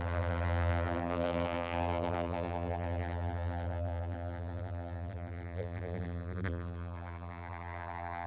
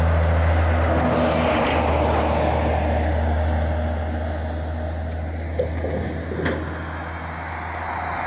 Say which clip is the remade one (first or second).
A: first